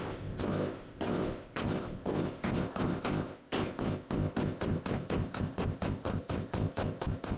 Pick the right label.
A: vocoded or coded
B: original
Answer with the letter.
A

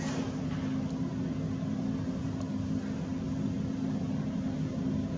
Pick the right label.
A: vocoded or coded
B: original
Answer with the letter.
B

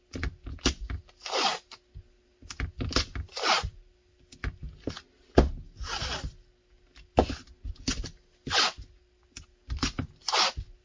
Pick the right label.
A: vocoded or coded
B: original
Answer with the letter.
B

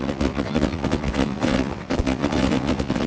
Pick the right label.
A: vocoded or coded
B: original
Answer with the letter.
A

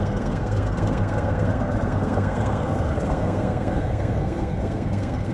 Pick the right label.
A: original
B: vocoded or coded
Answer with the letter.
B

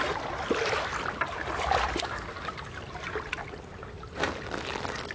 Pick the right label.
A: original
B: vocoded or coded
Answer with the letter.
A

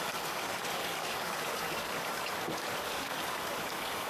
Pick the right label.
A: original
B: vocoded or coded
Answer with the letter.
B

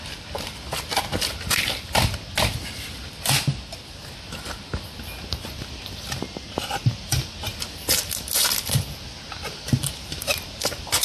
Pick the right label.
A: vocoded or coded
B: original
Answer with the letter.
B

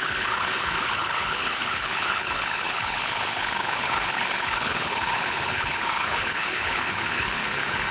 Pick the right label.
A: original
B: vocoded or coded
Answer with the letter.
B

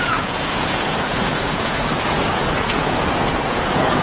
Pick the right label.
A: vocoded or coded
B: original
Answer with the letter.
A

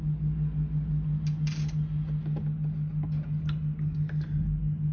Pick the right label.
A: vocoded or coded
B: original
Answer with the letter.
B